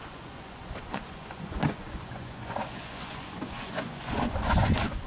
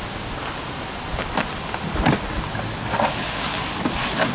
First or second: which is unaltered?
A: second